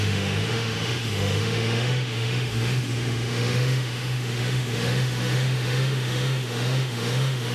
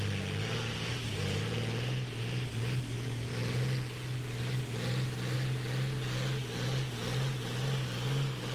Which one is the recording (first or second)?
second